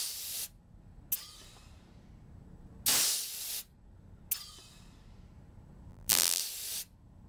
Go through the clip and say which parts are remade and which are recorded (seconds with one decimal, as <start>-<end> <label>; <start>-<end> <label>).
0.0-5.9 recorded; 5.9-6.4 remade; 6.4-7.3 recorded